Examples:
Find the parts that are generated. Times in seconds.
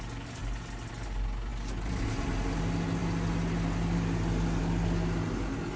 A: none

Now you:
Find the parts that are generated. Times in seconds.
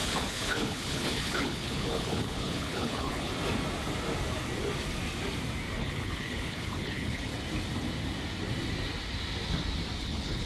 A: 0.0-3.3; 5.8-7.3; 10.0-10.5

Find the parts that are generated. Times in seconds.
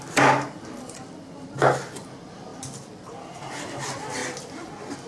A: none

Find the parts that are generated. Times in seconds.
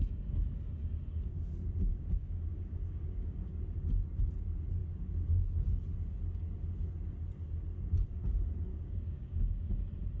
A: 1.9-3.5; 8.7-9.7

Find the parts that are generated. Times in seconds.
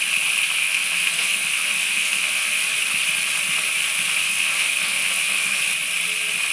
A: 0.6-2.6; 4.2-5.6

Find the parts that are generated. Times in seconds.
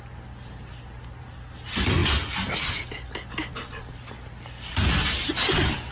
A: none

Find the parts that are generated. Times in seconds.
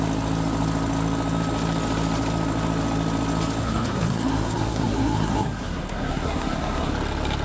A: 3.6-6.9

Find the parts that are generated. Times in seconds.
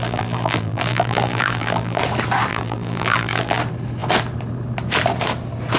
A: 0.0-2.0; 2.5-3.6